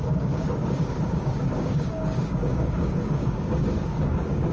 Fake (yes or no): yes